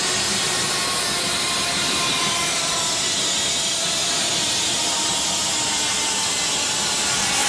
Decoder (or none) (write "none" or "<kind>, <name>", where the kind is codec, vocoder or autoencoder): none